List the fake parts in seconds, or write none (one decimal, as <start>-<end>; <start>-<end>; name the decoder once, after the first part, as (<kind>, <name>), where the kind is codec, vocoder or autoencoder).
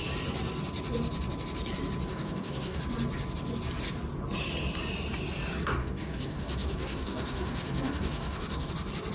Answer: 2.1-2.8 (codec, DAC); 5.8-8.7